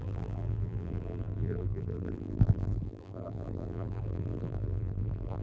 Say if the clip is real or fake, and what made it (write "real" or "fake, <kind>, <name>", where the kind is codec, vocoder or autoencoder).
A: fake, vocoder, BigVGAN v2